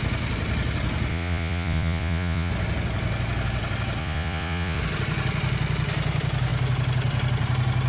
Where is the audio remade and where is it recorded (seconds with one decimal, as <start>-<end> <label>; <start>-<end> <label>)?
0.0-1.1 recorded; 1.1-2.5 remade; 2.5-4.0 recorded; 4.0-4.8 remade; 4.8-7.9 recorded